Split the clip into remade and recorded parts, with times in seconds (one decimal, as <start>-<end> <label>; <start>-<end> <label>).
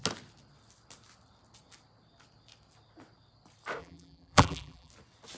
0.0-3.8 recorded; 3.8-4.9 remade; 4.9-5.4 recorded